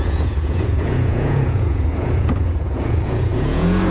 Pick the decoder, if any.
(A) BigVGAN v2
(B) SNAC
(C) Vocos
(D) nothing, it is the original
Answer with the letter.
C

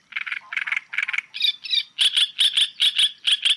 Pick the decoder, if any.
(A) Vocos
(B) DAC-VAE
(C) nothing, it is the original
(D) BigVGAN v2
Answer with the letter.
C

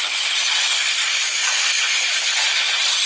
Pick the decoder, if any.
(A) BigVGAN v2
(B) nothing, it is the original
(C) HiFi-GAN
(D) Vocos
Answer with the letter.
B